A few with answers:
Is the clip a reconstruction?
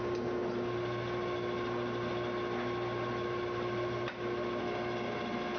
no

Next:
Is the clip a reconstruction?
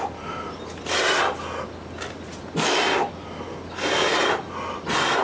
no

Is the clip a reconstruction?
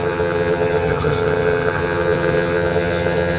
yes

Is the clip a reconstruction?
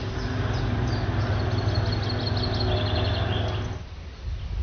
no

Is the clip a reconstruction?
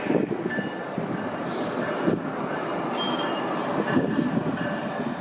no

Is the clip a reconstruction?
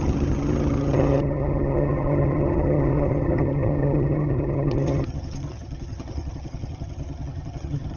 yes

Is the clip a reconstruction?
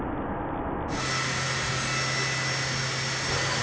no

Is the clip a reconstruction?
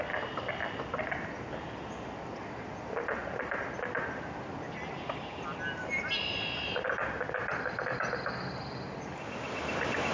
no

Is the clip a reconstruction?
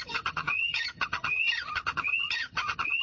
yes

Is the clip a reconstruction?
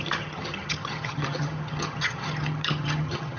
yes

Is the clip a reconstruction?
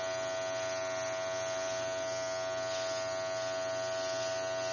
no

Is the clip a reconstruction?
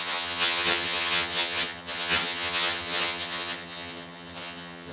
yes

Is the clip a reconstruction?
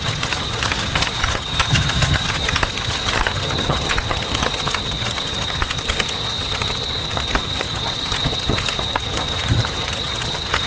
yes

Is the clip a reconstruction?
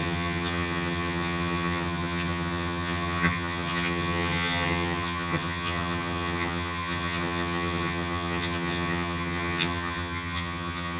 yes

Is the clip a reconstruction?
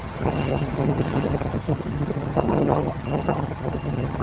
yes